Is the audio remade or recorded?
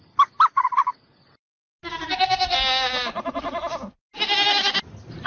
recorded